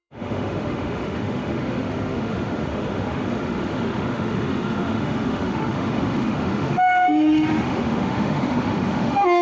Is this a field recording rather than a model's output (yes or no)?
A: no